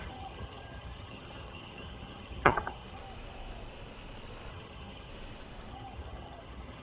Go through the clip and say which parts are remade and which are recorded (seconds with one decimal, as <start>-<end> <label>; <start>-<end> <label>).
0.0-3.0 remade; 3.0-4.5 recorded; 4.5-5.1 remade; 5.1-5.7 recorded; 5.7-6.8 remade